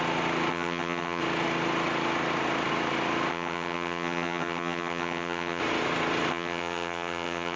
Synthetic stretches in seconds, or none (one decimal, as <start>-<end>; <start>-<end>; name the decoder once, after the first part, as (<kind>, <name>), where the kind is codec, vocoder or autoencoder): 0.5-1.2 (vocoder, HiFi-GAN); 3.3-5.6; 6.3-7.6